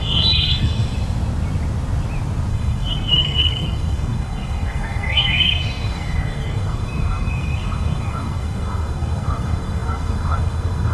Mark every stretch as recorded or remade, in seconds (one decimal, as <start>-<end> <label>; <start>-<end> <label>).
0.0-0.8 remade; 0.8-2.5 recorded; 2.5-10.9 remade